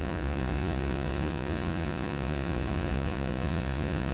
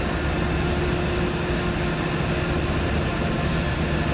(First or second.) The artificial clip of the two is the first